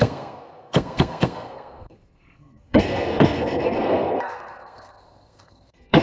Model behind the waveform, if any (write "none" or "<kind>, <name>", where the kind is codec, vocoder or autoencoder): codec, SNAC